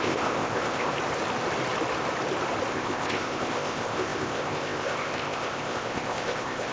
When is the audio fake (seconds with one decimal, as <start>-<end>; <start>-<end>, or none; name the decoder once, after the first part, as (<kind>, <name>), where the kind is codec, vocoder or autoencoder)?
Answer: 0.0-0.9 (codec, ZipCodec); 2.7-6.7